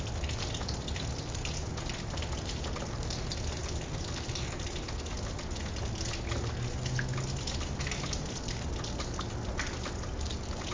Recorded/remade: recorded